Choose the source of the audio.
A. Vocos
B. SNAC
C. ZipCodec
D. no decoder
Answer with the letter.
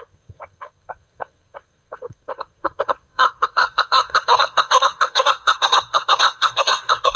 B